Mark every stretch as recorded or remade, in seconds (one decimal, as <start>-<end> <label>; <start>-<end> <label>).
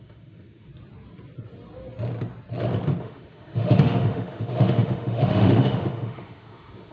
0.0-0.7 remade; 0.7-3.0 recorded; 3.0-6.9 remade